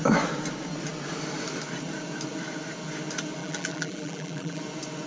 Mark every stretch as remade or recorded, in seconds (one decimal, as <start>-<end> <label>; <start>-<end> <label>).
0.0-3.4 recorded; 3.4-4.6 remade; 4.6-5.1 recorded

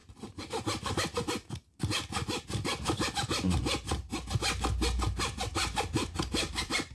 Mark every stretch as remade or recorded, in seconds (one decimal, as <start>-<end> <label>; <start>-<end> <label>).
0.0-3.6 remade; 3.6-5.5 recorded; 5.5-6.9 remade

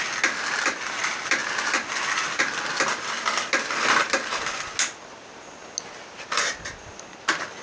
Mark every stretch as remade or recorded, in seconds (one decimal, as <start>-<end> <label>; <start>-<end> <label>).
0.0-7.6 recorded

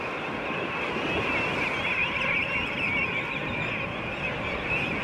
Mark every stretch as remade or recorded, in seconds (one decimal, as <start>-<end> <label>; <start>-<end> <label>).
0.0-2.0 recorded; 2.0-3.7 remade; 3.7-5.0 recorded

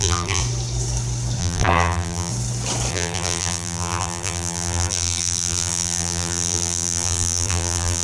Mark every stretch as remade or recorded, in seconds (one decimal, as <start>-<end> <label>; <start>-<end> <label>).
0.0-0.4 remade; 0.4-1.4 recorded; 1.4-2.3 remade; 2.3-2.9 recorded; 2.9-8.0 remade